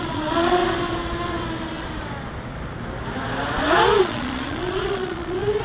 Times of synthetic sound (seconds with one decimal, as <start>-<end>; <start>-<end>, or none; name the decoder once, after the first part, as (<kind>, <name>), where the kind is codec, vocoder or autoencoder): 0.0-0.6 (vocoder, Vocos); 4.0-5.6